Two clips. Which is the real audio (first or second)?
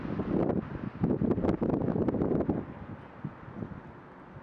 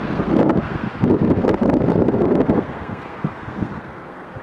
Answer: first